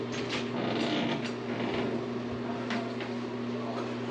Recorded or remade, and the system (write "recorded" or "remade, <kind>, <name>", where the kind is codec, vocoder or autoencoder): recorded